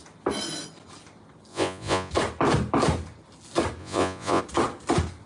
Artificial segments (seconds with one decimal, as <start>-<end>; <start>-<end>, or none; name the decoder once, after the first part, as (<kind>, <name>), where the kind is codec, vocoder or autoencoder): 1.5-2.1 (vocoder, Vocos); 3.8-4.4